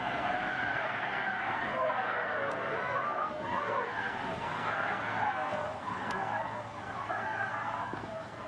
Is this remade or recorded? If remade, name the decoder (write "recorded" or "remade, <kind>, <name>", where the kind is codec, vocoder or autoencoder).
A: remade, codec, SNAC